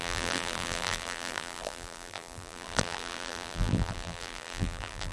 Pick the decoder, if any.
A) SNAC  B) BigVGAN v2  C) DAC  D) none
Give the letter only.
B